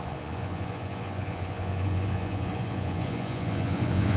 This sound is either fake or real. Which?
fake